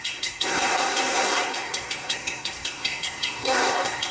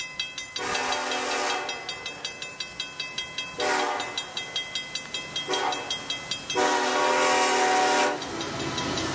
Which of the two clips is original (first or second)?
second